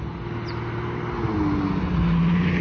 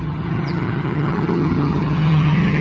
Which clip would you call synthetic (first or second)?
second